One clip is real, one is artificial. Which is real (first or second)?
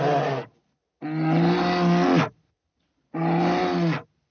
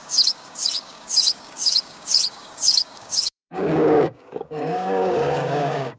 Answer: first